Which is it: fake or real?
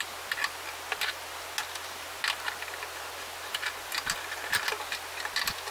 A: real